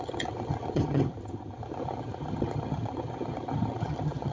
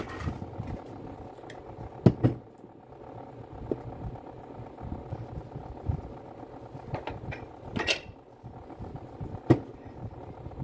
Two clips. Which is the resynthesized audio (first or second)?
first